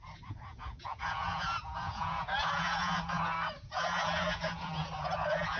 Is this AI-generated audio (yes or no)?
yes